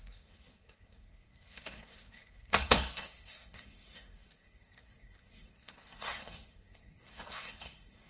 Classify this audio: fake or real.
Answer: fake